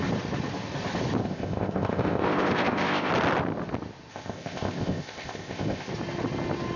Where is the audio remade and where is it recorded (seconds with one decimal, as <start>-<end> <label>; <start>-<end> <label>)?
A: 0.0-1.2 recorded; 1.2-3.1 remade; 3.1-4.1 recorded; 4.1-5.9 remade; 5.9-6.8 recorded

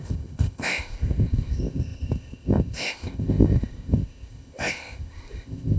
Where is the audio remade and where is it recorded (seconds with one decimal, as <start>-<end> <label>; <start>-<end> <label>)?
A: 0.0-5.8 remade

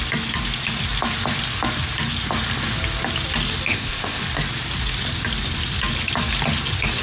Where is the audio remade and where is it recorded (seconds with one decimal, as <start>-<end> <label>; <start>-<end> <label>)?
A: 0.0-3.7 recorded; 3.7-4.2 remade; 4.2-7.0 recorded

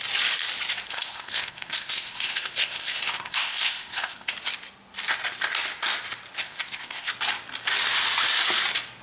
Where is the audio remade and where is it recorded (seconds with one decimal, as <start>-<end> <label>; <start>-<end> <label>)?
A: 0.0-0.9 recorded; 0.9-4.3 remade; 4.3-6.4 recorded; 6.4-7.1 remade; 7.1-9.0 recorded

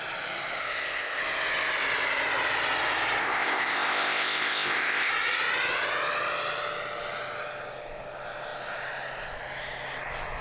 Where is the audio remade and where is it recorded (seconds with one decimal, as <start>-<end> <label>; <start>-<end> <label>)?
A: 0.0-0.6 recorded; 0.6-1.2 remade; 1.2-3.2 recorded; 3.2-5.1 remade; 5.1-10.4 recorded